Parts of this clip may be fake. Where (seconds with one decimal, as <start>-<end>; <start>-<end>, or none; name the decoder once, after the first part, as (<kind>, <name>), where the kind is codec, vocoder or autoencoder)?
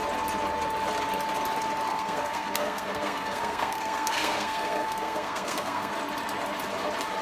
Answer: 1.9-5.9 (codec, SNAC)